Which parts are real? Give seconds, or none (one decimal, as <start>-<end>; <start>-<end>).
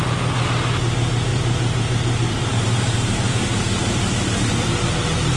0.0-1.3; 4.5-5.4